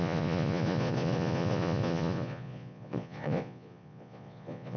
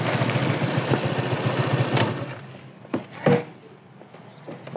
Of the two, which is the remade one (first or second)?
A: first